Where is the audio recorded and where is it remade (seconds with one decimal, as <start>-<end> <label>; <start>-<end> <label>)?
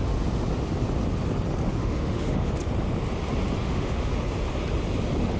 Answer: 0.0-1.8 recorded; 1.8-2.5 remade; 2.5-3.6 recorded; 3.6-4.1 remade; 4.1-5.4 recorded